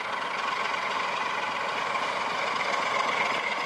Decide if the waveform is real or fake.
real